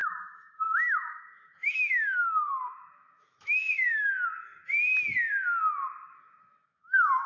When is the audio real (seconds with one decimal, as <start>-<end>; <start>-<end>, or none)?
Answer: 4.1-6.0